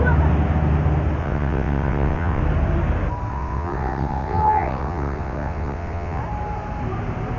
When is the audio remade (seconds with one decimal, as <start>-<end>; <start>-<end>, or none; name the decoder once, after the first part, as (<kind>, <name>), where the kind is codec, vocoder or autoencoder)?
1.2-2.4 (vocoder, WaveNeXt); 3.3-6.2